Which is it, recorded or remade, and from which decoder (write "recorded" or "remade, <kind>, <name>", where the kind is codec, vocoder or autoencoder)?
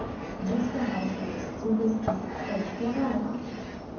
recorded